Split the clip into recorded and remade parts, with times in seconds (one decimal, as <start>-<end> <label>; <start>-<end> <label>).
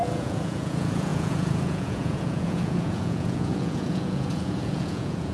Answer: 0.0-5.3 remade